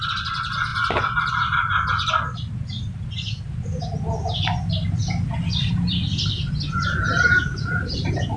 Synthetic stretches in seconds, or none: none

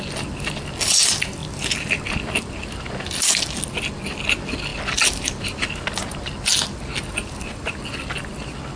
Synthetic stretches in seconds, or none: none

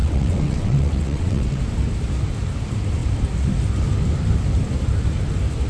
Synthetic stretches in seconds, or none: 0.0-1.6

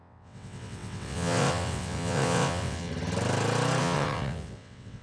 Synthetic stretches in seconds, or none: 0.0-2.9; 3.8-5.0

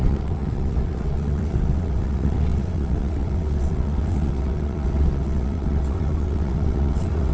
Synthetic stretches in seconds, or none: 0.0-7.3

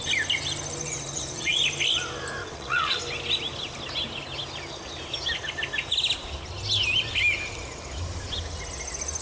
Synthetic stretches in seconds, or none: 0.8-1.6; 2.4-3.0